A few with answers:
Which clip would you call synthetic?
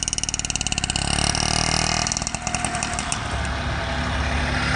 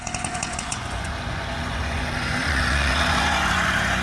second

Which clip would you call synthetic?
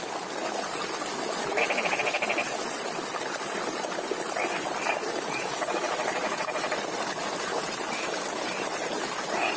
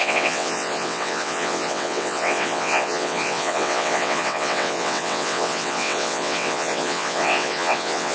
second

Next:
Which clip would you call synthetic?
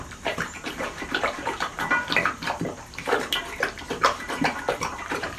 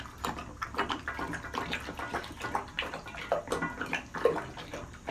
first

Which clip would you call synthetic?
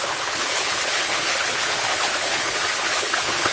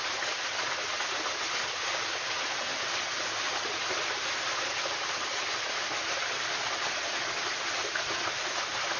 first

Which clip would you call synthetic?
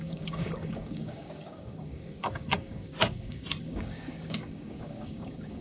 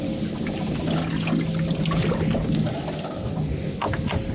first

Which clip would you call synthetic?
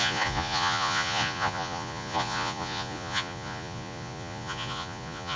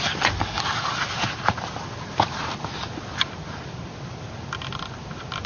first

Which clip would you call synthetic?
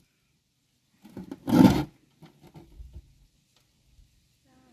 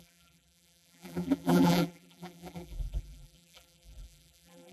second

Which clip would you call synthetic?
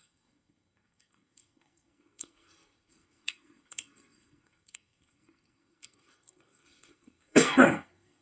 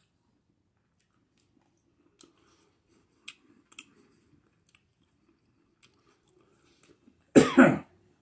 first